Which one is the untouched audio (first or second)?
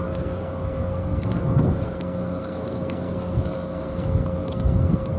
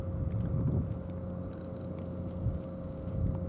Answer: second